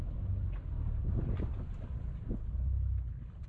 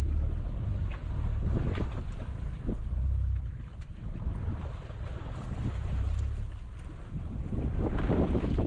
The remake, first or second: second